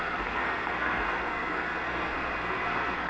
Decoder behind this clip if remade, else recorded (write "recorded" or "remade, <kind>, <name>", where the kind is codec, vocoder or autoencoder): remade, codec, SNAC